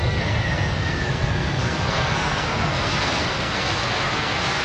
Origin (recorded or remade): remade